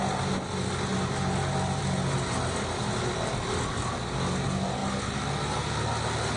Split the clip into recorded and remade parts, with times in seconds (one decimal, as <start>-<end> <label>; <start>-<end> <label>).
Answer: 0.0-6.4 recorded